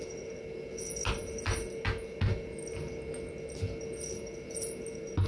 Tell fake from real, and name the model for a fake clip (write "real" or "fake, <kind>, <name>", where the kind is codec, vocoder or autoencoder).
real